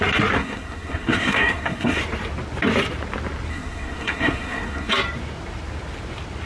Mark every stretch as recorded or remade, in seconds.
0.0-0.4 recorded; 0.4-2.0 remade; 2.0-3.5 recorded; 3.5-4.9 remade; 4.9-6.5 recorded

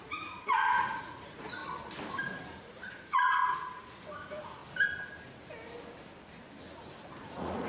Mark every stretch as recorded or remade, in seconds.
0.0-1.6 remade; 1.6-2.1 recorded; 2.1-4.6 remade; 4.6-7.1 recorded; 7.1-7.7 remade

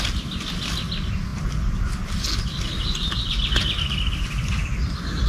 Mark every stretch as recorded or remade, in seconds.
0.0-5.3 recorded